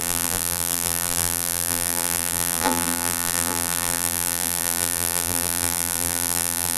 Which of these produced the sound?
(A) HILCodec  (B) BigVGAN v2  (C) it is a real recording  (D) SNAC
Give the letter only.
B